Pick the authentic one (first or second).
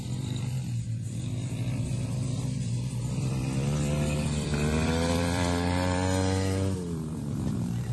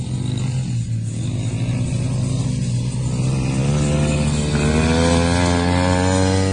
second